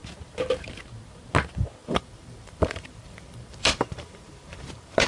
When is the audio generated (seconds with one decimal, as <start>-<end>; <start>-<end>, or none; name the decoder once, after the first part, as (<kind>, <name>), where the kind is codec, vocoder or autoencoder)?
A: 1.8-5.1 (vocoder, BigVGAN v2)